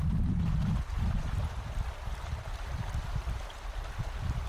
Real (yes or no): yes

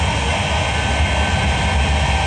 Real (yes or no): yes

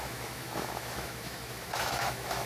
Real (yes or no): no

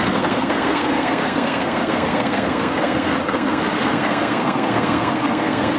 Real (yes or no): no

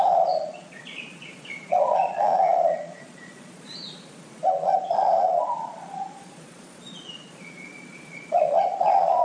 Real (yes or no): no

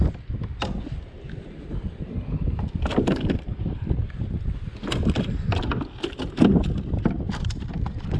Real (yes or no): yes